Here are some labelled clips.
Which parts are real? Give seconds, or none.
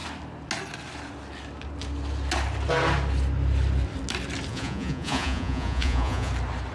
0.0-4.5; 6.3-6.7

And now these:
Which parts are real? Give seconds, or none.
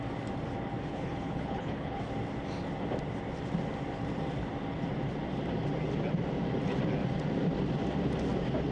0.0-0.9; 2.0-8.7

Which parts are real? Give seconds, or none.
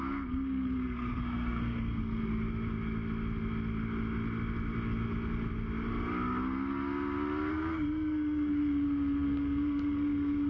2.3-7.5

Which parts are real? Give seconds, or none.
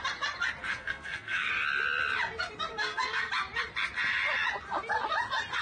0.0-0.7; 1.5-2.7; 3.3-5.6